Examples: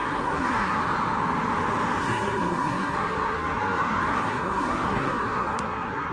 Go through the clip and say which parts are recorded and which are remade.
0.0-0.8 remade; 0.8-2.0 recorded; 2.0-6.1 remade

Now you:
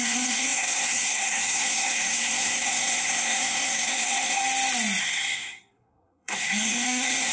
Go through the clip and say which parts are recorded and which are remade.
0.0-4.4 remade; 4.4-5.0 recorded; 5.0-7.3 remade

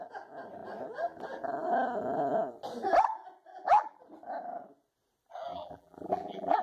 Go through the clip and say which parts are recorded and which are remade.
0.0-3.5 recorded; 3.5-4.0 remade; 4.0-5.5 recorded; 5.5-6.6 remade

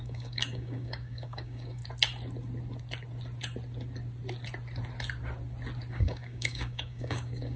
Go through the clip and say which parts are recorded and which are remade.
0.0-1.8 remade; 1.8-5.9 recorded; 5.9-7.6 remade